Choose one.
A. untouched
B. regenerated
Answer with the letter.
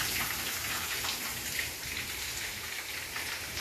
B